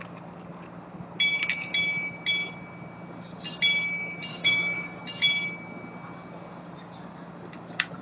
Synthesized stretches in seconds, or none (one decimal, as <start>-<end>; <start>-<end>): 4.3-5.0

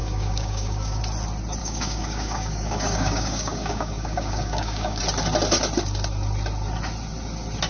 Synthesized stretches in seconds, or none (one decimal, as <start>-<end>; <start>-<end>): 0.0-1.0; 1.6-5.0

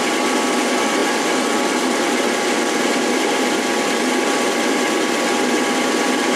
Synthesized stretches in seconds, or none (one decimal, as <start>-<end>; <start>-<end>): none